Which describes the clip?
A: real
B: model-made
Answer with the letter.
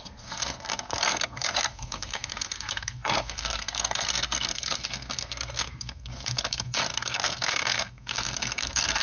B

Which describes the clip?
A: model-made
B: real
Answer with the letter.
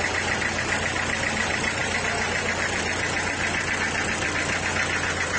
B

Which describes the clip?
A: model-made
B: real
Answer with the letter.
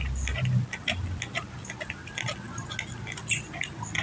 B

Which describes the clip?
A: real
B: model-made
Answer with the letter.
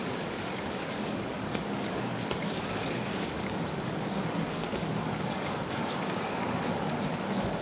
B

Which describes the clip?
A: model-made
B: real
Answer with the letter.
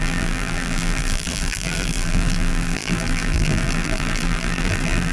A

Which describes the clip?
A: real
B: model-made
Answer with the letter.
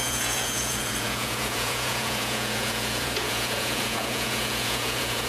B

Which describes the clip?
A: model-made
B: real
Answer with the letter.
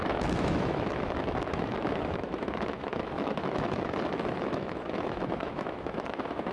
A